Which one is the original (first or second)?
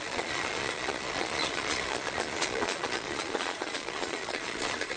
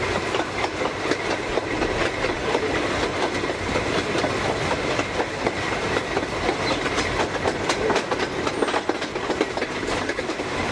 second